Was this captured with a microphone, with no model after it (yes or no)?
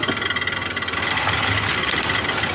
yes